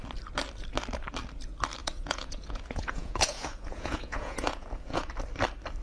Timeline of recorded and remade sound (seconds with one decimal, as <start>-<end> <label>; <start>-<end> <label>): 0.0-1.8 recorded; 1.8-5.1 remade; 5.1-5.8 recorded